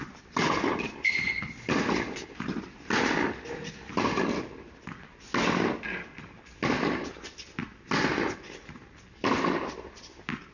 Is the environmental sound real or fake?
real